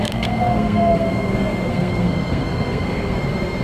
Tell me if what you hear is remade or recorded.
remade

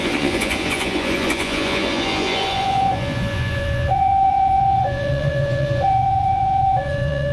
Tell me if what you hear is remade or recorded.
remade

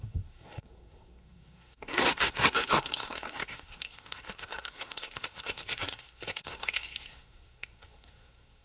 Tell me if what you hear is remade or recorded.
remade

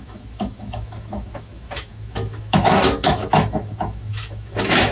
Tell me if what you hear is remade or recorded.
remade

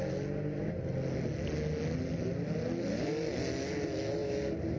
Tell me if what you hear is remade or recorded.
recorded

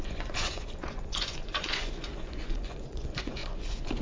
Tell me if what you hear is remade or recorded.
remade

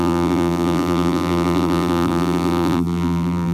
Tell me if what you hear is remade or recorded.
remade